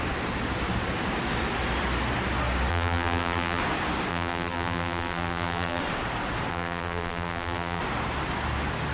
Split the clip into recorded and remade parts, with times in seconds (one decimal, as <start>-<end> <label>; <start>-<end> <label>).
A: 0.0-2.7 recorded; 2.7-3.6 remade; 3.6-4.1 recorded; 4.1-5.8 remade; 5.8-6.5 recorded; 6.5-7.8 remade; 7.8-8.9 recorded